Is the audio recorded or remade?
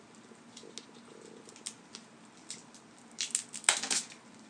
recorded